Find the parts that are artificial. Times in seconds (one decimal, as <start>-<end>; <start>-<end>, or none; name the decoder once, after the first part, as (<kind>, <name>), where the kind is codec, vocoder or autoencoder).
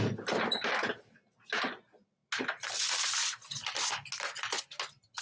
none